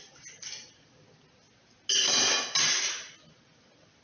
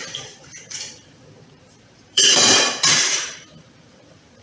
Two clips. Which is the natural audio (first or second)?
first